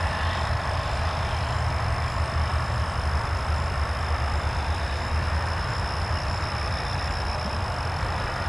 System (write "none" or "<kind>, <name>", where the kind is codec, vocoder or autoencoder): vocoder, BigVGAN v2